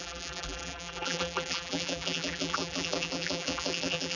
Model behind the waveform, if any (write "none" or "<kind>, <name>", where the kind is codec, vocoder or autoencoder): vocoder, BigVGAN v2